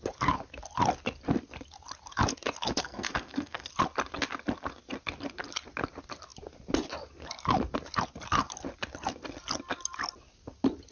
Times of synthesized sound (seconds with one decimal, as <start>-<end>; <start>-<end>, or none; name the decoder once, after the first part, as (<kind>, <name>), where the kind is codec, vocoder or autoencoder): 2.8-3.7 (codec, SNAC)